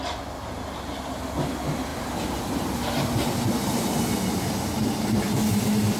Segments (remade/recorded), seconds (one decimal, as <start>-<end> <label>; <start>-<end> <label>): 0.0-6.0 recorded